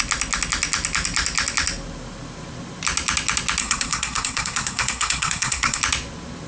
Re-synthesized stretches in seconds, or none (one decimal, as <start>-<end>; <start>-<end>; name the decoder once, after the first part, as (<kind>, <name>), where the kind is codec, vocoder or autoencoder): 3.6-5.8 (codec, SNAC)